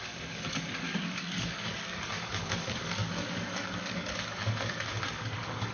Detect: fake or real fake